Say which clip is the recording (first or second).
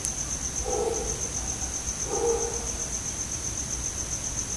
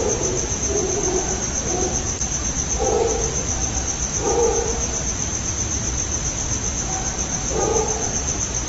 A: first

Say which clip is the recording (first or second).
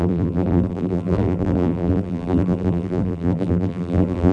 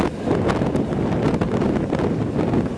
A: second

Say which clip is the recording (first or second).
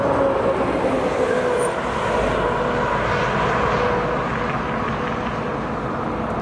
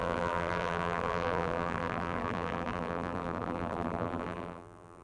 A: first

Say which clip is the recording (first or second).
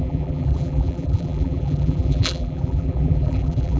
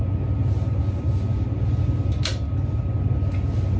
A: second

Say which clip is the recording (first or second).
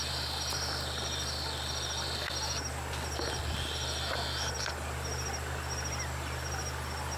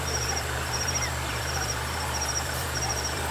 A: first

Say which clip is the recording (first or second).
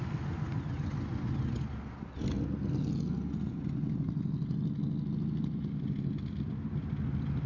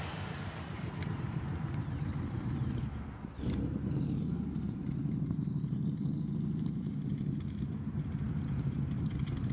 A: first